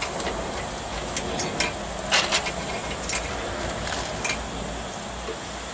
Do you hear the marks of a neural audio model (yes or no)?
no